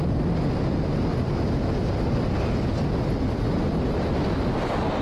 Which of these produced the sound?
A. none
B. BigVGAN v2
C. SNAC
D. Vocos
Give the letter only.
A